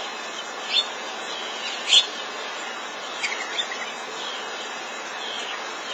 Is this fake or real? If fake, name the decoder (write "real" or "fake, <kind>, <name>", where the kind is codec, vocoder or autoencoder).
real